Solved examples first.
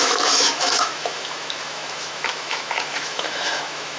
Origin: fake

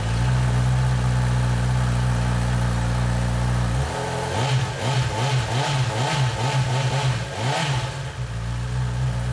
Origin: real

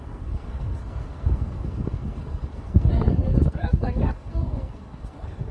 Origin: fake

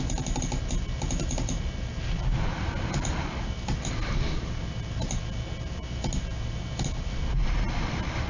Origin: real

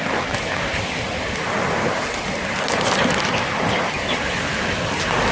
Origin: real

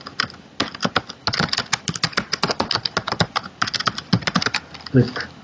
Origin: real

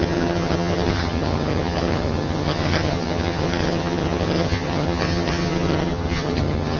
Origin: fake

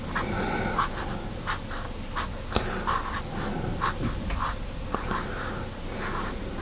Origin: real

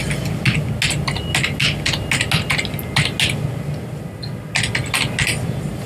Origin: real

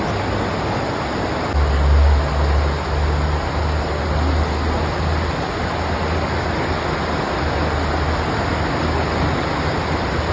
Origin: real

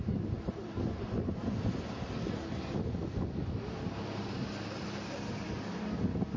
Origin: real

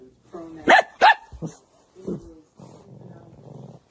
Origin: real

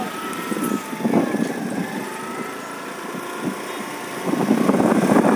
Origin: real